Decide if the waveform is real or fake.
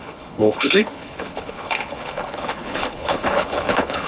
fake